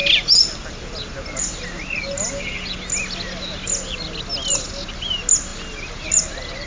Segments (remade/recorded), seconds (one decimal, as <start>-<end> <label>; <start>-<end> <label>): 0.0-6.7 recorded